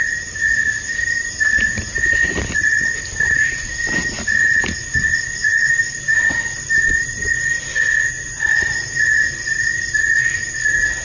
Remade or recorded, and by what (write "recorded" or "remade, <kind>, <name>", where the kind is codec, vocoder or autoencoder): recorded